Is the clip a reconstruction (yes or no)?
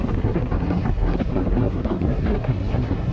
yes